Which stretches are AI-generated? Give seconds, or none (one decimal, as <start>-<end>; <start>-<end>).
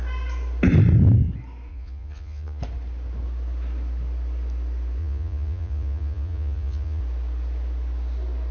1.7-2.6; 5.0-7.0